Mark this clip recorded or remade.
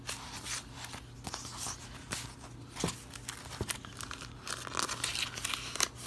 recorded